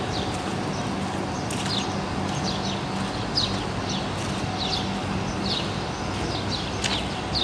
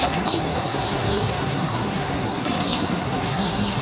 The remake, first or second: second